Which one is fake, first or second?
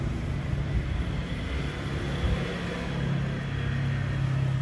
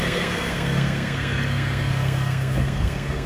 second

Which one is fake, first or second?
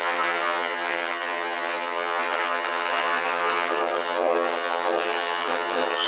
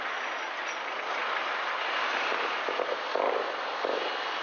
first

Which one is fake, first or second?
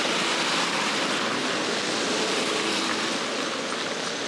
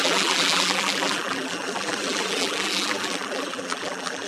second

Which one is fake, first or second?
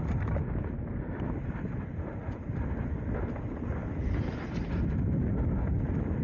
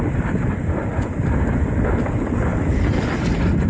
second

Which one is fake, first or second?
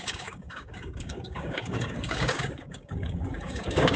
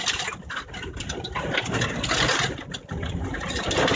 first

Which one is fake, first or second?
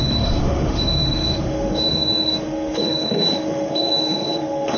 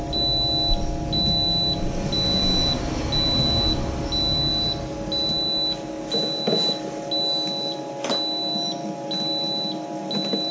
first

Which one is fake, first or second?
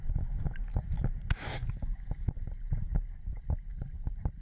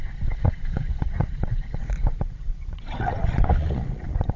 second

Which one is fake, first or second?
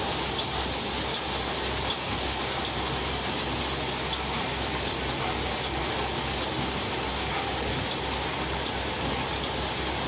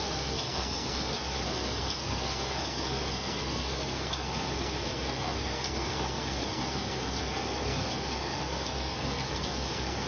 second